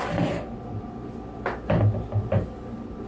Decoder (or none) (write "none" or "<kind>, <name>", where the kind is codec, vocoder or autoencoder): none